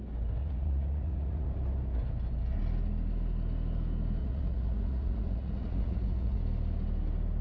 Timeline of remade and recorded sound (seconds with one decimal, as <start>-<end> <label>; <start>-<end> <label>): 0.0-0.4 recorded; 0.4-1.5 remade; 1.5-4.2 recorded; 4.2-6.4 remade; 6.4-7.4 recorded